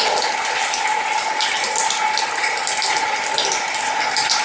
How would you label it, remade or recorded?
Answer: recorded